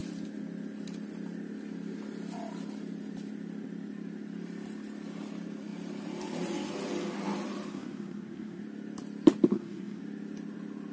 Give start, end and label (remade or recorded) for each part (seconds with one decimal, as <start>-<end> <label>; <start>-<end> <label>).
0.0-7.7 recorded; 7.7-8.6 remade; 8.6-9.5 recorded; 9.5-10.0 remade; 10.0-10.9 recorded

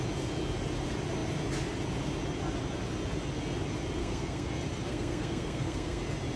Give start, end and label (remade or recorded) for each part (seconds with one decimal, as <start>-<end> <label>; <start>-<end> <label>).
0.0-4.0 recorded; 4.0-4.5 remade; 4.5-4.9 recorded; 4.9-6.0 remade; 6.0-6.4 recorded

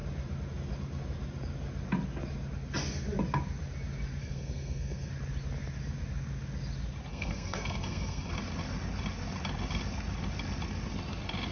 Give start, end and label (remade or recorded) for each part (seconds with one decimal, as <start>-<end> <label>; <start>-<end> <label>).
0.0-4.2 recorded; 4.2-5.1 remade; 5.1-7.1 recorded; 7.1-8.3 remade; 8.3-11.5 recorded

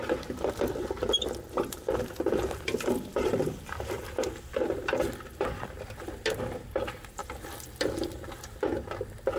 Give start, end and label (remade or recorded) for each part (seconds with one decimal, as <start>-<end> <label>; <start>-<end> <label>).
0.0-9.4 recorded

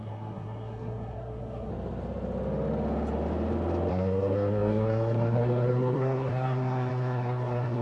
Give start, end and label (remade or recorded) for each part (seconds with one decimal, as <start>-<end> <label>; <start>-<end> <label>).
0.0-1.7 remade; 1.7-3.9 recorded; 3.9-7.8 remade